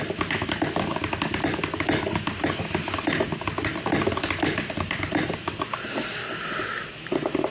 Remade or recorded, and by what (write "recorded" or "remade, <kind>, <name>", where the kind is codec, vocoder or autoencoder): recorded